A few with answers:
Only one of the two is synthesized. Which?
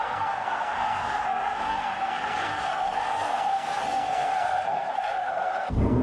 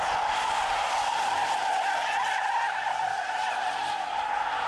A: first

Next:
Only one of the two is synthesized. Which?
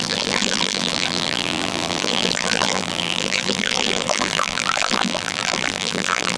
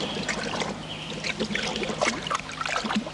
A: first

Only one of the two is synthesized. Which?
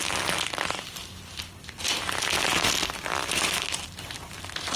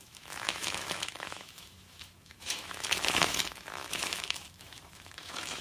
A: second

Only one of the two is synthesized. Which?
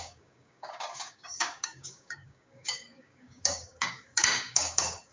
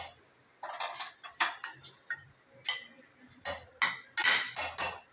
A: first